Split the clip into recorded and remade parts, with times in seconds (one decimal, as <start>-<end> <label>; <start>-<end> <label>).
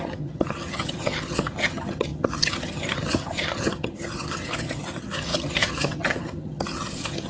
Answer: 0.0-7.3 remade